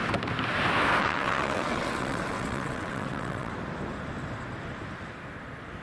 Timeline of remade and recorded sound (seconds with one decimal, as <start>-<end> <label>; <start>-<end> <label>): 0.0-1.0 recorded; 1.0-3.5 remade; 3.5-5.8 recorded